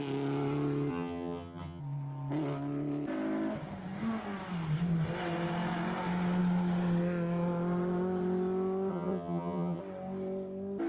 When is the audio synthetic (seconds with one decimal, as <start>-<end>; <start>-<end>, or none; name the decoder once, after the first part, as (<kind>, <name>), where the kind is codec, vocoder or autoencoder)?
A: 0.9-1.8 (vocoder, HiFi-GAN); 8.9-9.8

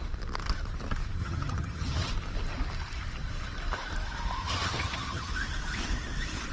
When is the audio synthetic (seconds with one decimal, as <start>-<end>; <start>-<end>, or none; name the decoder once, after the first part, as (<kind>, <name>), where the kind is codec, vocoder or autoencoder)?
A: 1.2-2.1 (vocoder, HiFi-GAN); 4.4-5.3

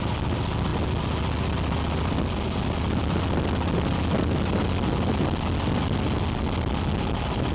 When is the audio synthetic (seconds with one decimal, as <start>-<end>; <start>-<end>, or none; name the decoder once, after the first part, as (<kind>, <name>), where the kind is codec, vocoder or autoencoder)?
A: none

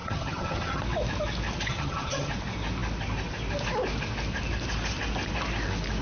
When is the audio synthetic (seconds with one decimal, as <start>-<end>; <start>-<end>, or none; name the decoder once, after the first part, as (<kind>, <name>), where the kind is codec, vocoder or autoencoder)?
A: 0.0-0.8 (vocoder, HiFi-GAN); 1.7-2.3